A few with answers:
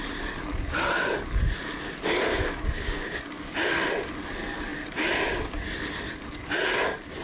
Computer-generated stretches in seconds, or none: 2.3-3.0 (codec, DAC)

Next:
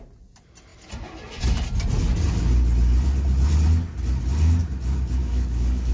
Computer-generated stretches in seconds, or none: 5.2-5.9 (codec, DAC)

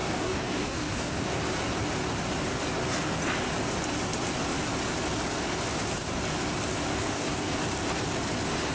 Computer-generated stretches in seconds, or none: 0.0-1.4 (codec, DAC); 6.9-7.6

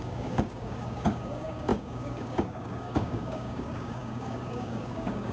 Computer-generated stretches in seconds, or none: 0.0-5.3 (codec, DAC)

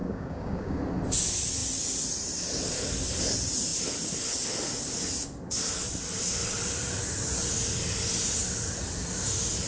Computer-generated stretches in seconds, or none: 0.0-0.8 (codec, DAC)

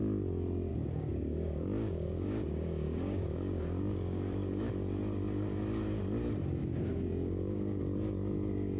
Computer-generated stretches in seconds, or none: 0.7-4.7 (codec, DAC); 6.6-7.8

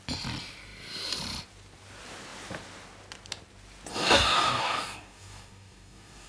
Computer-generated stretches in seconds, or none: 3.9-6.3 (codec, DAC)

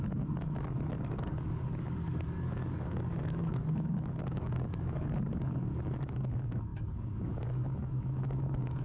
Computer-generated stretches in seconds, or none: 0.0-8.8 (codec, DAC)